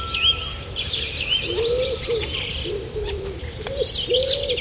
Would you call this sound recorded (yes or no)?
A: yes